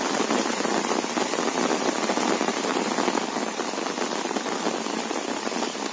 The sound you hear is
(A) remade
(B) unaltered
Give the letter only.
B